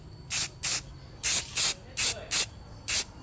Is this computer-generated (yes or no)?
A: no